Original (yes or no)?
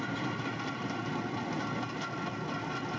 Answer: yes